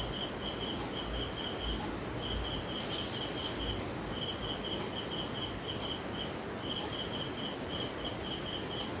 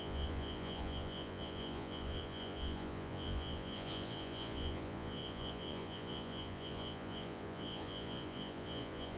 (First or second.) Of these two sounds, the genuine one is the first